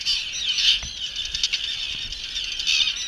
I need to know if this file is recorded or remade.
recorded